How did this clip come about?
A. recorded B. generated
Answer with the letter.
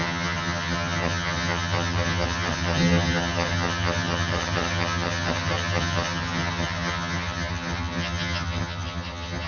B